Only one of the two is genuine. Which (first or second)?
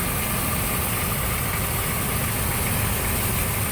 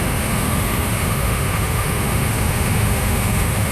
first